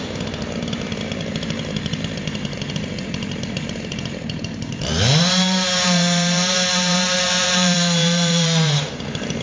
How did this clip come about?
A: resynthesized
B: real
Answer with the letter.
A